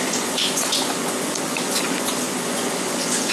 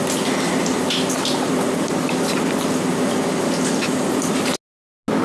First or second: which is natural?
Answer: second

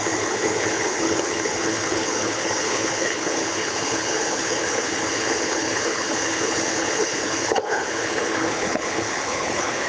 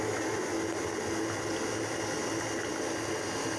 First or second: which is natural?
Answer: second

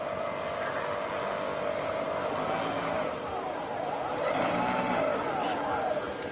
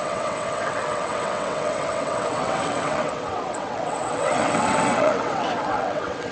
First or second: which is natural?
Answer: first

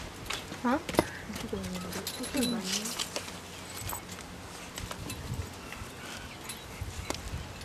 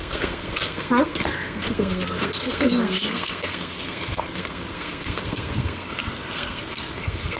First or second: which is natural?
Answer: first